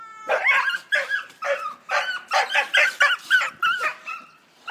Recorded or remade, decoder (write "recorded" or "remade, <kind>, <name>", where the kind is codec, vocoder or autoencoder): recorded